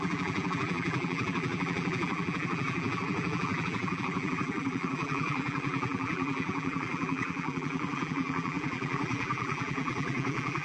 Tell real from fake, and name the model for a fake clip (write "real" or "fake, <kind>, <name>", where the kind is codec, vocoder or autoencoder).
fake, vocoder, BigVGAN v2